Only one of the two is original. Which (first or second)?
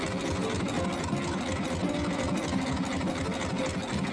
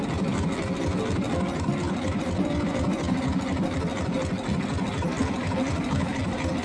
first